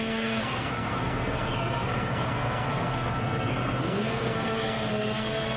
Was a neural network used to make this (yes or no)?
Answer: yes